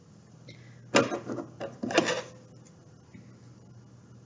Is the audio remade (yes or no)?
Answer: no